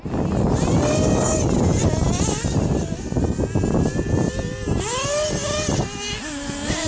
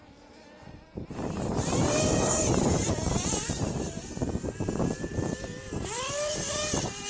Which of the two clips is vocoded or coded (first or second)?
second